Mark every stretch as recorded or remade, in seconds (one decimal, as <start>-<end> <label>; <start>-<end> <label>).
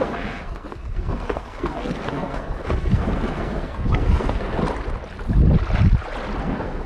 0.0-4.6 remade; 4.6-6.4 recorded; 6.4-6.9 remade